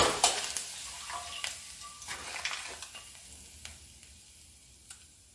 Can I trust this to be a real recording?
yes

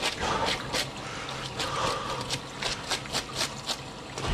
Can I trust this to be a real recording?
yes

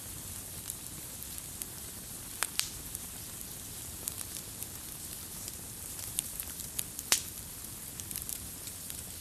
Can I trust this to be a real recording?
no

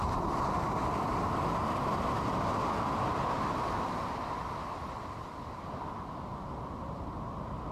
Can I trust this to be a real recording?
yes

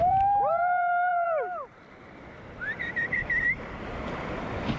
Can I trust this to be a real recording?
no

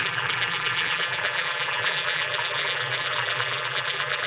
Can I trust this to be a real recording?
no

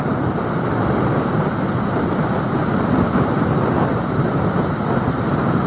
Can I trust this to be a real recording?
yes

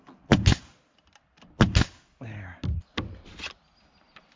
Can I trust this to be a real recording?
yes